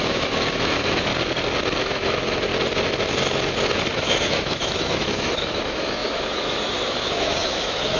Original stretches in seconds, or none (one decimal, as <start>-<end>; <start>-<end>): 1.1-1.8; 2.5-4.0